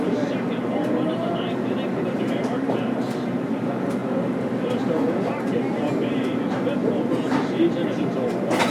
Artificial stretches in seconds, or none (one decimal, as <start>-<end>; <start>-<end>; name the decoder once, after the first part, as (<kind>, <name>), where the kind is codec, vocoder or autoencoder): none